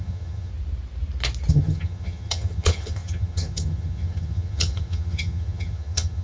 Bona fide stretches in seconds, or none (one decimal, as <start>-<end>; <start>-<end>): 0.5-1.5